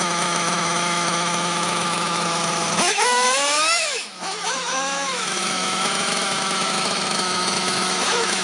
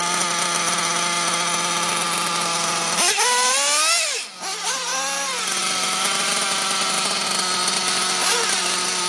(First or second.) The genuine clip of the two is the second